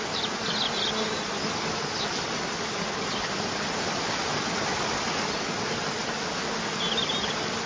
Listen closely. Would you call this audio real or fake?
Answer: real